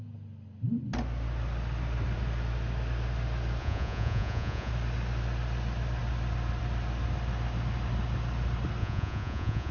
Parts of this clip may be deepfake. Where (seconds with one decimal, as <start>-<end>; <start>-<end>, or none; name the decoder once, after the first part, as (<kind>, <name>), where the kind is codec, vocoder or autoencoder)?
3.6-4.7 (vocoder, Vocos); 8.8-9.7